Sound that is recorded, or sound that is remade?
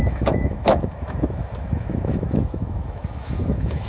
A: remade